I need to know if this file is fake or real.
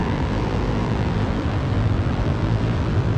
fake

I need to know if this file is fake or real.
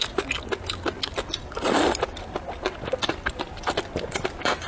real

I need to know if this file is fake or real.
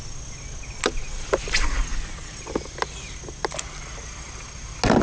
real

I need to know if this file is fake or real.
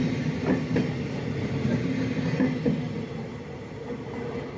real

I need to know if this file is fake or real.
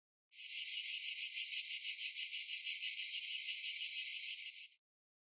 real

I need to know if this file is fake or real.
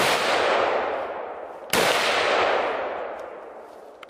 real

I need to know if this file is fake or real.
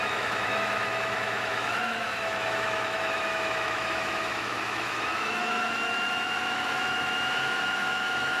fake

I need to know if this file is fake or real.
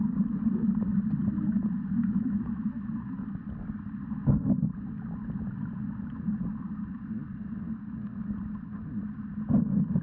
real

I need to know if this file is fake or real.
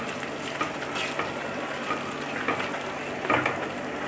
real